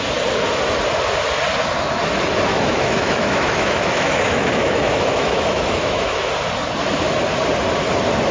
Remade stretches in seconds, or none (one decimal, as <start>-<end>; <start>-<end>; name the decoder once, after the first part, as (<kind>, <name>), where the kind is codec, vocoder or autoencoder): 2.5-6.3 (autoencoder, DAC-VAE)